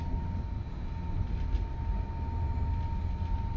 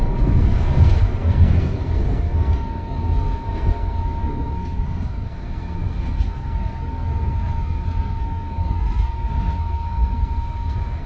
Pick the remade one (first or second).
second